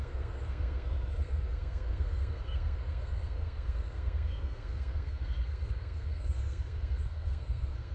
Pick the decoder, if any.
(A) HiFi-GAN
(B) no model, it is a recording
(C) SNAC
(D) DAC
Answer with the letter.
C